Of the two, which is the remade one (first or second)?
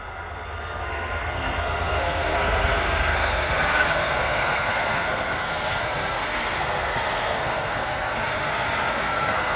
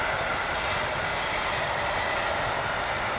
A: first